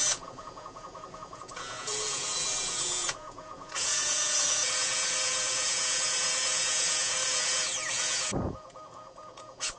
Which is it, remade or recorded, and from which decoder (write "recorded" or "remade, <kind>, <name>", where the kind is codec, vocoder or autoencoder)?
remade, vocoder, Vocos